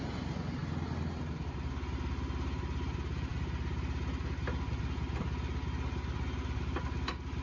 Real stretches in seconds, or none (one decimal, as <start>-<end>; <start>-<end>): 0.0-7.4